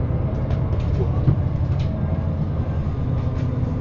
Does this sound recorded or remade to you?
recorded